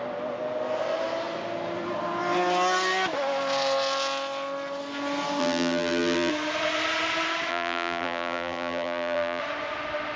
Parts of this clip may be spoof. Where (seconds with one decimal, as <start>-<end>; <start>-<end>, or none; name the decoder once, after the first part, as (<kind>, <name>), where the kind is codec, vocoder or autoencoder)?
5.4-6.3 (vocoder, BigVGAN v2); 7.5-9.4